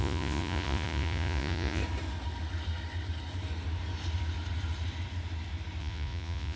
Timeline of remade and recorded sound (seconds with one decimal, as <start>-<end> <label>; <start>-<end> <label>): 0.0-1.8 remade; 1.8-5.8 recorded; 5.8-6.6 remade

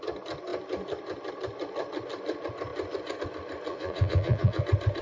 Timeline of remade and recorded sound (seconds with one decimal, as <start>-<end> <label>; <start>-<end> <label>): 0.0-3.7 recorded; 3.7-4.6 remade; 4.6-5.0 recorded